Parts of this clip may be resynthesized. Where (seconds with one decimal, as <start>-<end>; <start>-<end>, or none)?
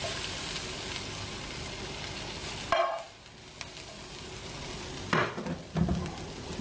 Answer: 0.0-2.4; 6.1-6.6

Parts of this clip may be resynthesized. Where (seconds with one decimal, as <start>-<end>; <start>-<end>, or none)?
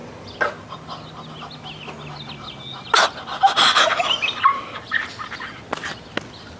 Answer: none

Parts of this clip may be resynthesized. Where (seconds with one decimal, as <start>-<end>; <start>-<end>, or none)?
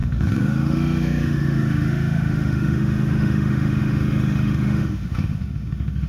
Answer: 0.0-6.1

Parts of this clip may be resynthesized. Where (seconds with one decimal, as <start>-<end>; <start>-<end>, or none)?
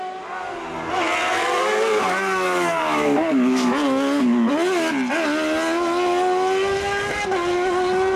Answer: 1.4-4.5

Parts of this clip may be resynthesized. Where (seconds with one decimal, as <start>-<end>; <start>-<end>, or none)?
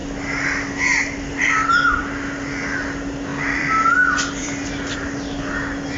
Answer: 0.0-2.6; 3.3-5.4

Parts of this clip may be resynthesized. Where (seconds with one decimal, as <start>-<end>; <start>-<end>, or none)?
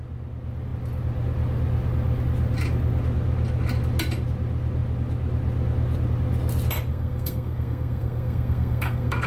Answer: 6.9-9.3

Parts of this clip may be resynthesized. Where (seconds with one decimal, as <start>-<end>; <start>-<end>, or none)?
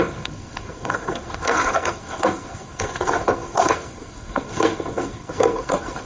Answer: 0.0-6.0